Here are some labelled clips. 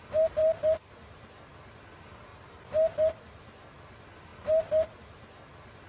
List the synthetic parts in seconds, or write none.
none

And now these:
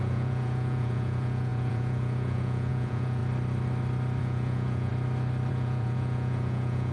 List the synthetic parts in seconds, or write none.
0.0-3.2 (vocoder, Vocos); 4.2-4.9; 5.5-6.9

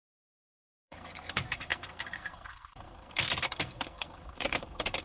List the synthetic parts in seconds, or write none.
0.0-5.0 (codec, SNAC)

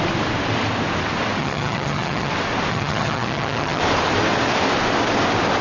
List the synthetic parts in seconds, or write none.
1.4-2.3 (vocoder, HiFi-GAN); 2.7-3.8

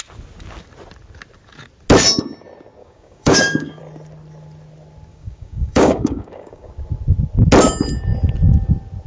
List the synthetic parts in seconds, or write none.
2.8-3.8 (codec, DAC); 5.1-6.7